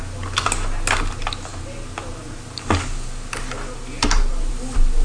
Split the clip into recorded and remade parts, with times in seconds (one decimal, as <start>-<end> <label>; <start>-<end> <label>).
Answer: 0.0-5.0 recorded